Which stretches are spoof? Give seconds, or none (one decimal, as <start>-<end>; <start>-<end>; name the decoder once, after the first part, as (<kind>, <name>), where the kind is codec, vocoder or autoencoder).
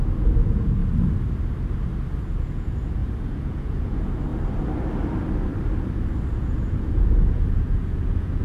0.0-0.8 (vocoder, Vocos); 2.2-4.3; 6.3-8.4